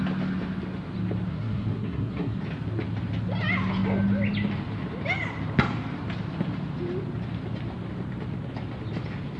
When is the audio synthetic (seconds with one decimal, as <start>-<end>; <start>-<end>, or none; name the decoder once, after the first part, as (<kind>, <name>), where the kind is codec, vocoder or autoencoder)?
1.3-2.4 (codec, SNAC)

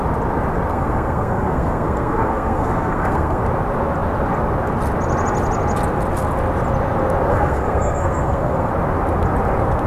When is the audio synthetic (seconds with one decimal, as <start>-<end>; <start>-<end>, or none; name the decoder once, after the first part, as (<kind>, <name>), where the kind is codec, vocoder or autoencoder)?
0.7-3.4 (codec, SNAC); 7.3-8.7

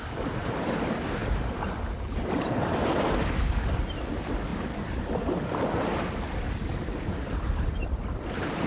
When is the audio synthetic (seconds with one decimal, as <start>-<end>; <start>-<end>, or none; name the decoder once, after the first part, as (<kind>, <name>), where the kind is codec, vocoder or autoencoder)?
1.2-3.1 (vocoder, BigVGAN v2); 4.5-8.7